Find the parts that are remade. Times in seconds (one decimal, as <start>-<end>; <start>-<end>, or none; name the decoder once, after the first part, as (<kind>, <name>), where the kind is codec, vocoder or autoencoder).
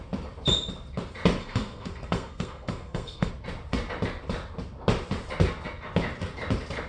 1.4-3.3 (codec, SNAC)